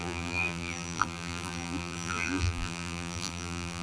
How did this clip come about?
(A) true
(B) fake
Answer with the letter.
B